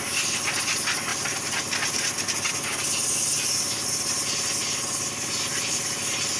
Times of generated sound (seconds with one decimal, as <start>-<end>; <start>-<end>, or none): none

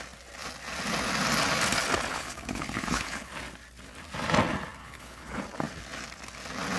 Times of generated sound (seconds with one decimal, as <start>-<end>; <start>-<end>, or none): 2.1-3.3; 4.8-5.4

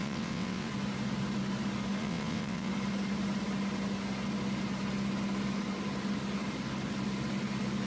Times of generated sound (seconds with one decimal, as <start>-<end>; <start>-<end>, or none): 0.0-0.7; 2.0-2.7

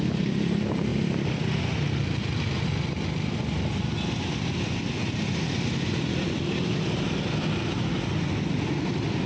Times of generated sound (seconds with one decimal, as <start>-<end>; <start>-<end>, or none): 0.9-1.4

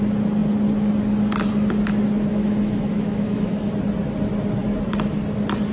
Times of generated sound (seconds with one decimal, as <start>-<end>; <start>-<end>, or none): 2.3-3.7

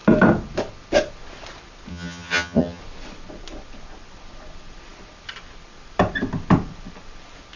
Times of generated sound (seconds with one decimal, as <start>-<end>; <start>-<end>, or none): 1.9-2.8

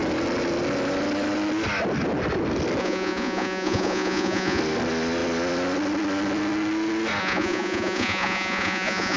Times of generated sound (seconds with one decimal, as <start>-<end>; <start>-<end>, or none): 2.8-4.6; 7.2-9.2